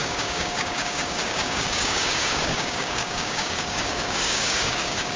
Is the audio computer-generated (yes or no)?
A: yes